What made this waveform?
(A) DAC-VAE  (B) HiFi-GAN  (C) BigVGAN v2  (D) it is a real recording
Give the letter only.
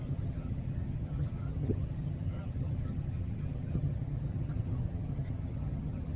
B